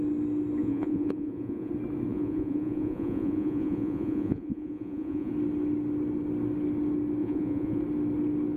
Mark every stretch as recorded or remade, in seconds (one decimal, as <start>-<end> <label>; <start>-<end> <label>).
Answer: 0.0-0.6 recorded; 0.6-1.7 remade; 1.7-2.1 recorded; 2.1-5.3 remade; 5.3-7.2 recorded; 7.2-7.8 remade; 7.8-8.6 recorded